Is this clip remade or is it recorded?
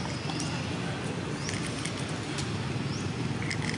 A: recorded